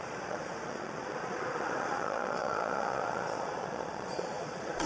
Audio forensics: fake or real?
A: fake